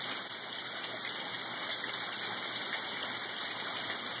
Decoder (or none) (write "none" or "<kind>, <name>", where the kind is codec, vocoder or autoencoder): vocoder, BigVGAN v2